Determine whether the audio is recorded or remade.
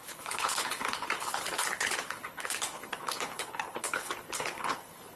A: remade